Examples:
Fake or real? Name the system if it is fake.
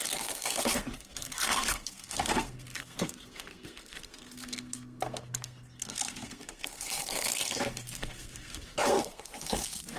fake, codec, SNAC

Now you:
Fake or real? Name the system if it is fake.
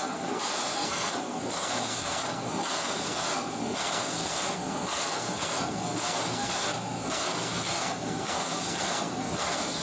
fake, codec, SNAC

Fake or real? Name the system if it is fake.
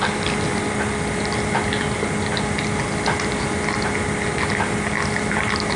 real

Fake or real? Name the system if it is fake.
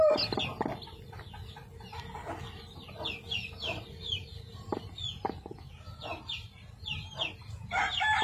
real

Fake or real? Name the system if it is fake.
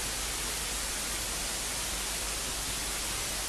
real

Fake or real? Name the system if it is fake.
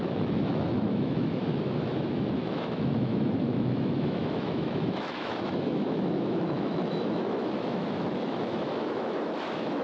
fake, autoencoder, DAC-VAE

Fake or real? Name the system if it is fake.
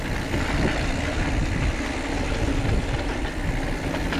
real